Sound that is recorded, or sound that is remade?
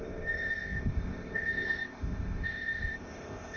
remade